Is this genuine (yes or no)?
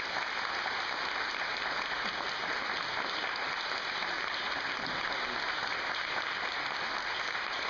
yes